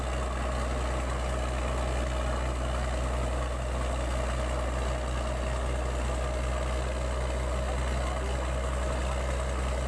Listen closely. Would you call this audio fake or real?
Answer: real